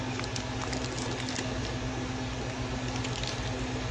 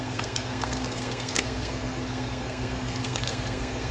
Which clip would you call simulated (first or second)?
second